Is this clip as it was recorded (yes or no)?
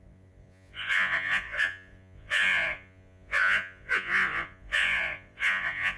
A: no